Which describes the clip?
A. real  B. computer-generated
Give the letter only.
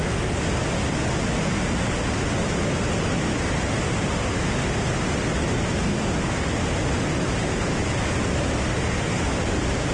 A